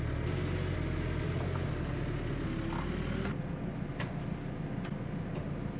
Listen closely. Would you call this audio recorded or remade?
recorded